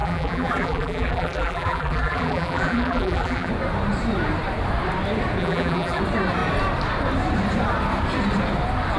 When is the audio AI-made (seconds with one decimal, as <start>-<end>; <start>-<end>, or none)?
0.0-3.5; 5.4-6.0